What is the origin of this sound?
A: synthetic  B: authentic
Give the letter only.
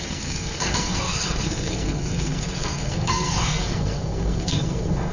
A